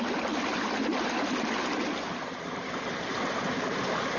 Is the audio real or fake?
real